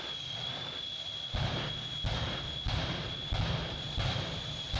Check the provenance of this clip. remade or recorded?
recorded